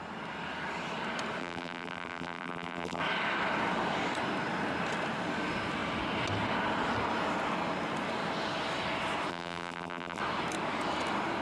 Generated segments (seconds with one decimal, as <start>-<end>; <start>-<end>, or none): 1.4-3.0; 9.3-10.2